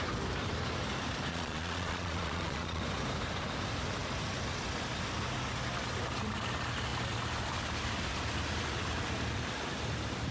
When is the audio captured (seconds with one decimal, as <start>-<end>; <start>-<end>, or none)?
0.0-1.3; 2.8-10.3